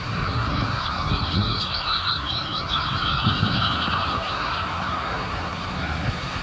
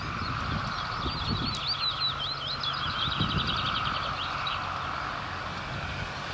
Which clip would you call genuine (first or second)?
second